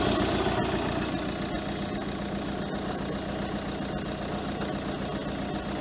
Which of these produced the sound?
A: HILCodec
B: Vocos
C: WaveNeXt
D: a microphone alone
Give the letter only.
D